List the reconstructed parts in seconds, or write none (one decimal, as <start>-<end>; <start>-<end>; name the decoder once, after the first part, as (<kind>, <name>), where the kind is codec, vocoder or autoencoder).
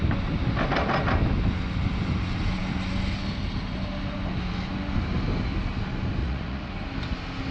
6.2-6.7 (vocoder, Vocos)